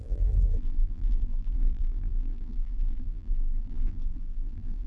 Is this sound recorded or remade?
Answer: remade